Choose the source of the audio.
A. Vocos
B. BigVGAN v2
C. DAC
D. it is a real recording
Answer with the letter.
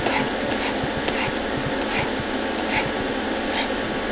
D